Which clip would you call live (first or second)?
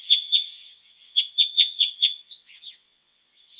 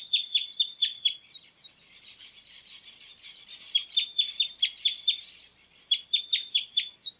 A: second